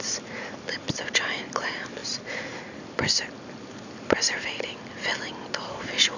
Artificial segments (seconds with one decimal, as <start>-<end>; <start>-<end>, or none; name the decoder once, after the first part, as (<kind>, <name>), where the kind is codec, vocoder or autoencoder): none